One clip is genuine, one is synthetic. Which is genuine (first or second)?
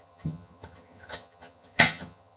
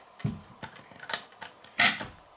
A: second